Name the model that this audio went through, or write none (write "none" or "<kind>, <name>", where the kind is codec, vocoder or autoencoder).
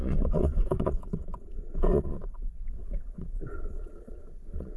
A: vocoder, Vocos